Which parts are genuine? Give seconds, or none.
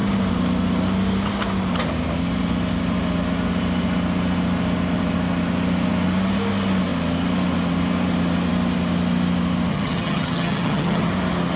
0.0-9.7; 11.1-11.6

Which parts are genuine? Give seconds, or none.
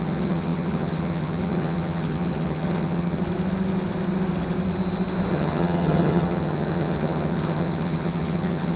3.2-5.3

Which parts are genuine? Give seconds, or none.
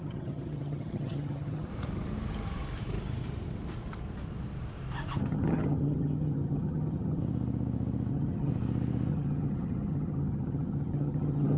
1.7-5.2; 7.2-8.1; 8.5-9.1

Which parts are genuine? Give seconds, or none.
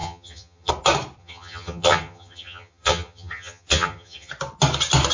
0.7-1.2; 4.3-5.1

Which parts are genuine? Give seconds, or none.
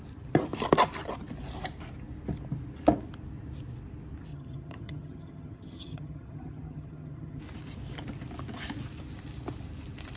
0.0-4.3; 7.4-10.2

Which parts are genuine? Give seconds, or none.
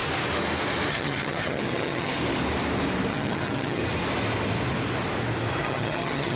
0.0-0.9; 2.1-3.1; 3.8-5.6